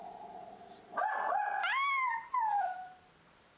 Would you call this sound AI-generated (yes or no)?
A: no